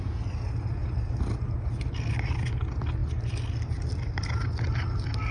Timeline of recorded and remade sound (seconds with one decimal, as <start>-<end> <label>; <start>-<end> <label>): 0.0-5.3 recorded